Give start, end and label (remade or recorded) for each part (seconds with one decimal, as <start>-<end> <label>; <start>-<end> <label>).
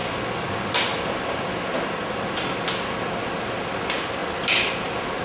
0.0-5.2 recorded